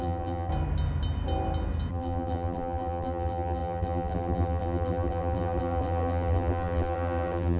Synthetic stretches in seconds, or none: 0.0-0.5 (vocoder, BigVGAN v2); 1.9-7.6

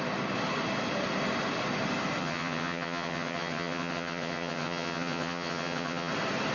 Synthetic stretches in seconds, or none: 2.2-6.1 (vocoder, HiFi-GAN)

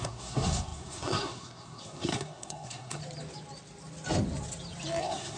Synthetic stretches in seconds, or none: 0.0-3.0 (codec, SNAC); 5.0-5.4